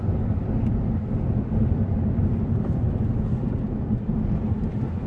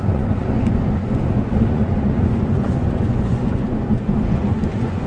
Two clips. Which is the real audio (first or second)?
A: first